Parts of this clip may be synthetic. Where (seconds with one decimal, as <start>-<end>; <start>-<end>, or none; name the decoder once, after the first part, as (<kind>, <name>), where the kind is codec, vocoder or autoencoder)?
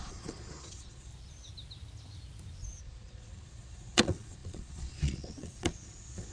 0.0-1.1 (vocoder, Vocos); 2.8-6.3